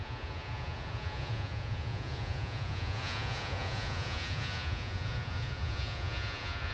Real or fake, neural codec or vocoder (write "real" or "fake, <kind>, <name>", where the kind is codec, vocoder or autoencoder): fake, vocoder, Vocos